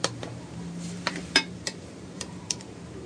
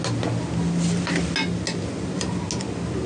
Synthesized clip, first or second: first